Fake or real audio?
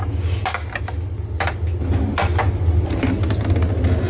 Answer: real